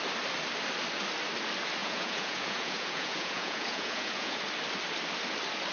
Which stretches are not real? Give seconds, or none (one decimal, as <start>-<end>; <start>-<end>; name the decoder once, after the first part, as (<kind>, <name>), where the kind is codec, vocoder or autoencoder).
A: 1.8-4.4 (vocoder, Vocos)